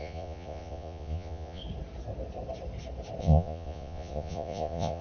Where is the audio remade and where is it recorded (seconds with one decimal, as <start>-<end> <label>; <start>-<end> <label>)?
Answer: 0.0-1.6 remade; 1.6-3.2 recorded; 3.2-5.0 remade